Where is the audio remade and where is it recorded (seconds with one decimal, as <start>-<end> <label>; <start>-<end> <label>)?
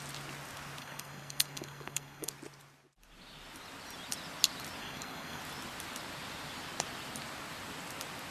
0.0-0.8 recorded; 0.8-2.3 remade; 2.3-4.8 recorded; 4.8-5.4 remade; 5.4-8.3 recorded